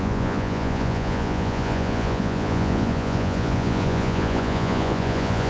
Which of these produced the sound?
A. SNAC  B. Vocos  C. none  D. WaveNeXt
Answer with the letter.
B